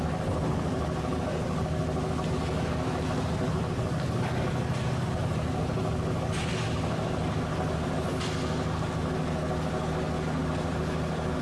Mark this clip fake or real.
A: real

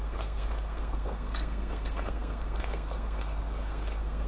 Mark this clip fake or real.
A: fake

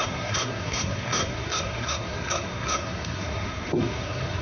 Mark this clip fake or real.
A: fake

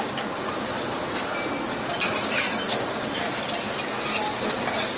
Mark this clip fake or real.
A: real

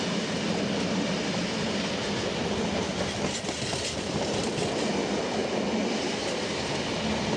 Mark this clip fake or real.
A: real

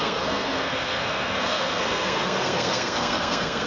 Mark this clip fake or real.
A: fake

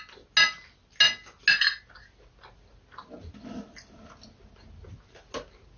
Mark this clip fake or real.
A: real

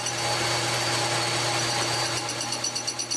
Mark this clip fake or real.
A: real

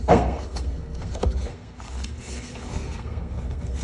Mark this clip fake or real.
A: fake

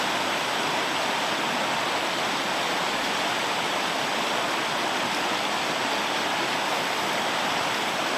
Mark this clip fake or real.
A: real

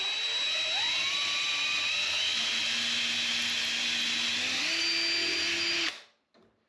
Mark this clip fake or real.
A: real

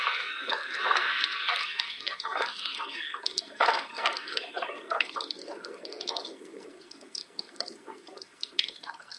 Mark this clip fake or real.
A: fake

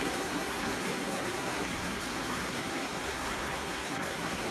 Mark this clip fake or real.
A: fake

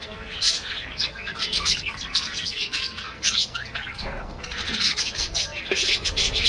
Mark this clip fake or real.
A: fake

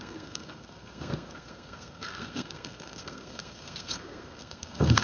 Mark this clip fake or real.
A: fake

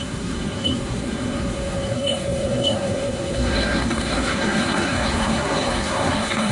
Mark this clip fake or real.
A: fake